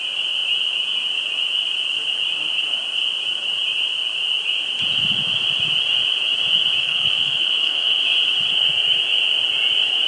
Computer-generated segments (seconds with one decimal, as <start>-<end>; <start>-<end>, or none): 6.8-8.0